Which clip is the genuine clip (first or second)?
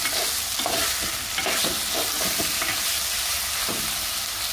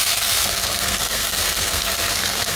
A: first